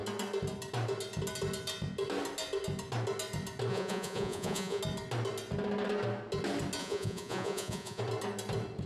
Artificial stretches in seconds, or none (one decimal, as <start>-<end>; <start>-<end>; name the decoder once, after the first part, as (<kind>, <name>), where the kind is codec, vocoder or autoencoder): 3.7-4.8 (vocoder, Vocos); 6.8-8.0